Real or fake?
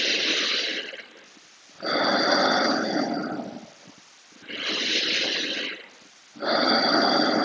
real